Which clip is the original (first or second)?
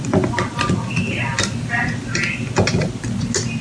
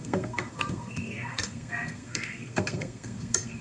first